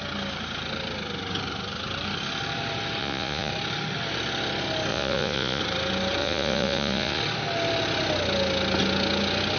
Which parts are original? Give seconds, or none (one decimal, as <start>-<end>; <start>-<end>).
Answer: 0.0-3.0; 3.5-4.9; 5.6-6.2; 7.2-9.6